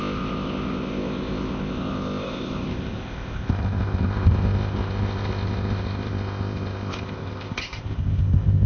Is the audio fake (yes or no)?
yes